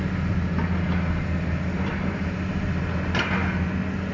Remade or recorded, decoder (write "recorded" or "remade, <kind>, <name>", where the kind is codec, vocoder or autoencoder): recorded